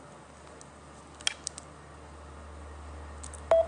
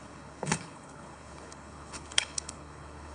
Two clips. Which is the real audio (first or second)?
first